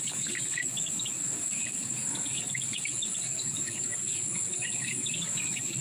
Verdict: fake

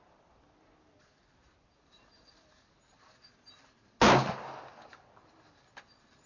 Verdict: real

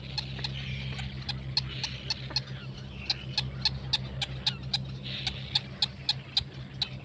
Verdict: real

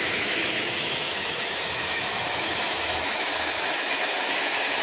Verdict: fake